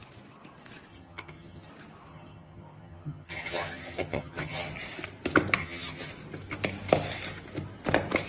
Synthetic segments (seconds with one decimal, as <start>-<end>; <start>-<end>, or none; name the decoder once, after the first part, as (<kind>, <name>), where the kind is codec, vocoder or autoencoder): 0.9-1.7 (vocoder, HiFi-GAN); 2.1-4.7; 5.6-6.1